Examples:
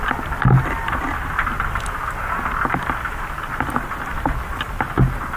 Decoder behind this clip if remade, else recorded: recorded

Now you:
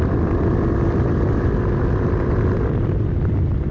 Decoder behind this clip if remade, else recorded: remade, vocoder, BigVGAN v2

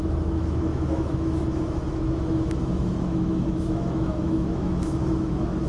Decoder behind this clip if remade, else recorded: remade, autoencoder, DAC-VAE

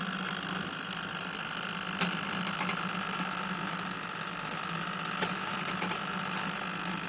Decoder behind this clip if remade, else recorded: recorded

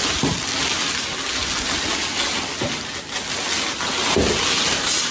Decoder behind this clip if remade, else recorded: recorded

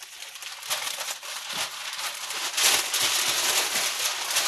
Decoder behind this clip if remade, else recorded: recorded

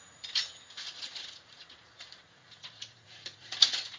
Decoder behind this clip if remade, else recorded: remade, vocoder, Vocos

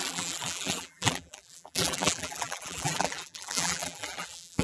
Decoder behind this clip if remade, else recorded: remade, vocoder, BigVGAN v2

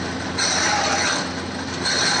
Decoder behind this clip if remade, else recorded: recorded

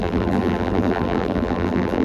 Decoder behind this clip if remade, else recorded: remade, vocoder, BigVGAN v2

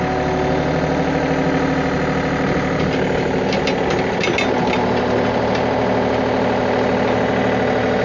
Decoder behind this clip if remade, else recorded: recorded